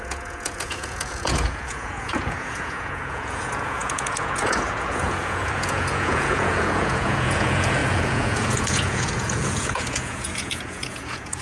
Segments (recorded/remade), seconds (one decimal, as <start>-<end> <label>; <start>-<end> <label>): 0.0-11.4 remade

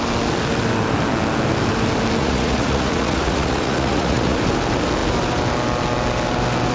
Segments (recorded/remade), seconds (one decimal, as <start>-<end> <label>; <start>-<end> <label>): 0.0-2.2 recorded; 2.2-4.4 remade; 4.4-6.7 recorded

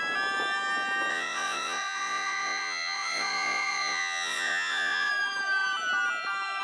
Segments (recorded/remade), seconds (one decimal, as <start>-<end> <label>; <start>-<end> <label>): 0.0-1.1 recorded; 1.1-5.1 remade; 5.1-6.6 recorded